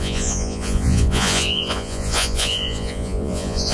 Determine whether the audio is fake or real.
fake